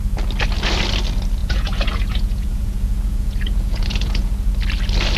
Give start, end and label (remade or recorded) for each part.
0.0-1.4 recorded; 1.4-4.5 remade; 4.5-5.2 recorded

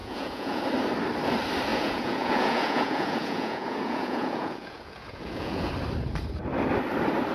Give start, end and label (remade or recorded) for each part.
0.0-0.6 remade; 0.6-1.7 recorded; 1.7-5.7 remade; 5.7-7.3 recorded

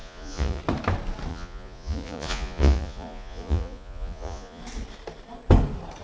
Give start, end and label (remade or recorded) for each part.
0.0-0.6 remade; 0.6-1.3 recorded; 1.3-4.6 remade; 4.6-6.0 recorded